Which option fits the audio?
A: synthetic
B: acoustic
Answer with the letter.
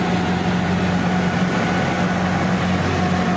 B